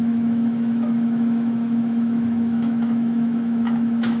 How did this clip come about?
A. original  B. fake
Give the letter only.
B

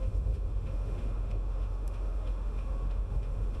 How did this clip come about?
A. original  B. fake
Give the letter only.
B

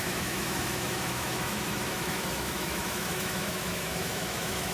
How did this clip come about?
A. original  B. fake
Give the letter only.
B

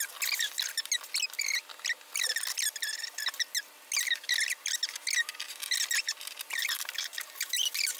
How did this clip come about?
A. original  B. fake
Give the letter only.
A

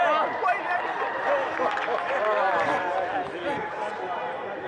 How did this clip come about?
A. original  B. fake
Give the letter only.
A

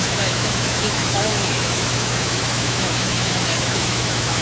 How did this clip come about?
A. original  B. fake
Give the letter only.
B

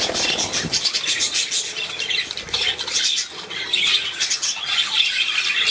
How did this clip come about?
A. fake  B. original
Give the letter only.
B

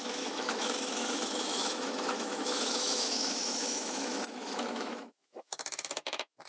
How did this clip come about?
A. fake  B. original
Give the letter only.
A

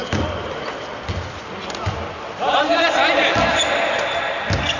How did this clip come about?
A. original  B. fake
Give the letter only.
A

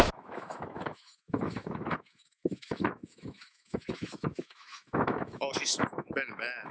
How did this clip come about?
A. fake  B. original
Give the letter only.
A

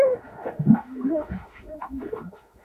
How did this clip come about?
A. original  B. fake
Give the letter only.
B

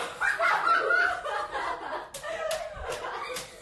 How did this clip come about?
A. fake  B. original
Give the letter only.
B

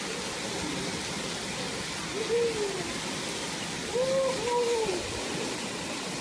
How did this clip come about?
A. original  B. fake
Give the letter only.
A